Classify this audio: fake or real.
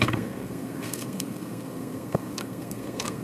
fake